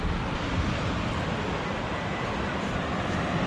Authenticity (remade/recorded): recorded